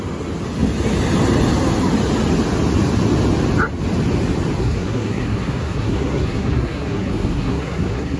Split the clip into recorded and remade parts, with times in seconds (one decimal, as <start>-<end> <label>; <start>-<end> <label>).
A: 0.0-4.6 recorded; 4.6-8.2 remade